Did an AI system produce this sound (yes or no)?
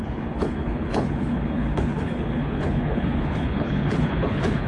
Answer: yes